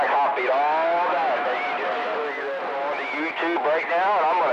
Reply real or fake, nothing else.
real